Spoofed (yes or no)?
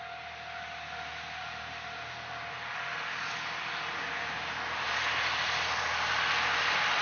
no